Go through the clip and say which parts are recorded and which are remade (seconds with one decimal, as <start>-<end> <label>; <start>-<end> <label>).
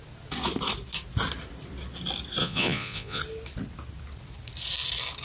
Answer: 0.0-2.4 recorded; 2.4-3.2 remade; 3.2-5.2 recorded